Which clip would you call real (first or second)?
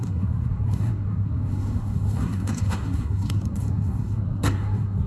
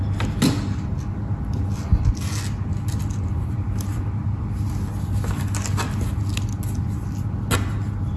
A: second